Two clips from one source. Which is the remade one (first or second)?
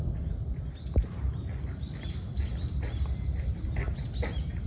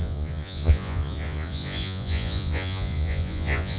second